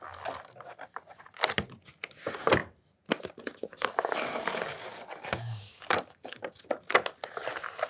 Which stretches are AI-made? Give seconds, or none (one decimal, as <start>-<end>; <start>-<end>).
3.6-6.6